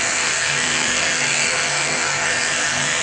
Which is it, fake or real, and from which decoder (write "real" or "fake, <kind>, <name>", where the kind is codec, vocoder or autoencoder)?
fake, codec, SNAC